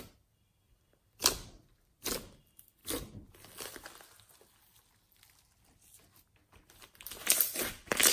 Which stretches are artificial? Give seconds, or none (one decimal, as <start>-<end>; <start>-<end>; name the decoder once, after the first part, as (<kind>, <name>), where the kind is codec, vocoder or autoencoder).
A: 0.0-2.8 (vocoder, BigVGAN v2); 6.7-8.1